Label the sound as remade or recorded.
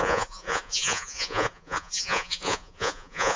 remade